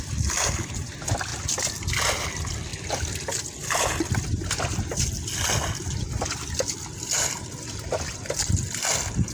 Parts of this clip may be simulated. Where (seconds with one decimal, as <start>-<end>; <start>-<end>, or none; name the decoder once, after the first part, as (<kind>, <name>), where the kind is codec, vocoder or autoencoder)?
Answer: none